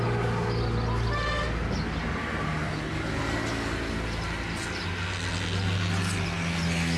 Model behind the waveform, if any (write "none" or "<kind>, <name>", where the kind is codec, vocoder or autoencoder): none